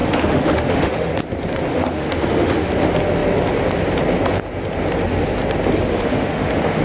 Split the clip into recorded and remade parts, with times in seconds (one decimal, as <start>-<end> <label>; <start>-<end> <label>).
0.0-1.1 remade; 1.1-1.7 recorded; 1.7-2.7 remade; 2.7-5.9 recorded; 5.9-6.8 remade